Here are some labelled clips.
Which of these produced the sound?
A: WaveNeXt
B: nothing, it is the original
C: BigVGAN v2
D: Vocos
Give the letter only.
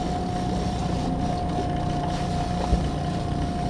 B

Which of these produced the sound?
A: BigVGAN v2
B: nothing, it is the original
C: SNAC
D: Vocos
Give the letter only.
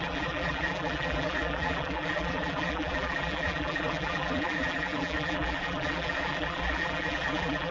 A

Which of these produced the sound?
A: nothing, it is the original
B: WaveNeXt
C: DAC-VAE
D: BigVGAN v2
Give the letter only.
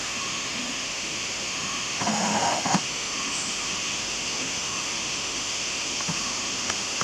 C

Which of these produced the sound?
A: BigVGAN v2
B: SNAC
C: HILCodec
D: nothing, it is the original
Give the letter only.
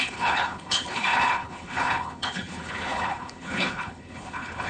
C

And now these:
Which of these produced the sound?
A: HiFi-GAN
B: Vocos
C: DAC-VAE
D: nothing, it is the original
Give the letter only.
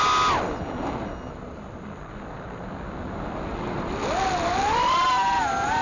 D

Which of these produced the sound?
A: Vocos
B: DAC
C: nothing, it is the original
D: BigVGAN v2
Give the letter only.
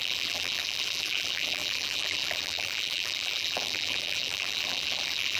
D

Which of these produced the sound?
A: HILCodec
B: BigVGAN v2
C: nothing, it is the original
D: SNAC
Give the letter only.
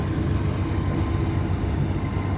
C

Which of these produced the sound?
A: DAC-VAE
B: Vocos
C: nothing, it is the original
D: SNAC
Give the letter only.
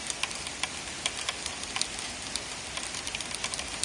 C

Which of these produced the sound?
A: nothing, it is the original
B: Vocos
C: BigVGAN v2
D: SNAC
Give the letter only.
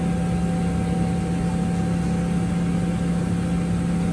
A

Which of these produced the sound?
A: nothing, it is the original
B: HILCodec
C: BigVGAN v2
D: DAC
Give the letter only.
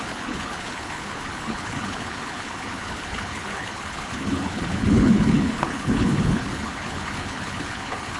B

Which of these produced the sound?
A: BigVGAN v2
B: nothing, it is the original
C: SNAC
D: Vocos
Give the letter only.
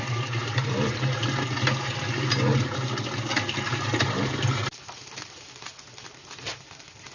B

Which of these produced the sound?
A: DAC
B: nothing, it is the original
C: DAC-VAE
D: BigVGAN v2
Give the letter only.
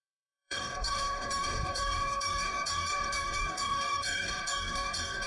A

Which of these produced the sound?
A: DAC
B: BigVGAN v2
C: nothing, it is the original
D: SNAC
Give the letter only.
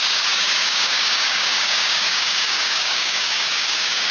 A